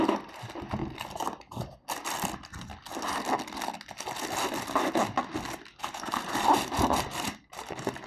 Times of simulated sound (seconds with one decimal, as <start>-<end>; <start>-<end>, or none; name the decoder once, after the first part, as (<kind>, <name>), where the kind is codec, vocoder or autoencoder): 0.0-0.8 (vocoder, BigVGAN v2); 5.7-8.1